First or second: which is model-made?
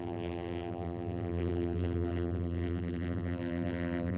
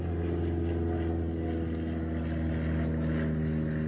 first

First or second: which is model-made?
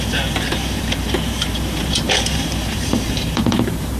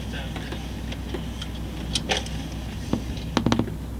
first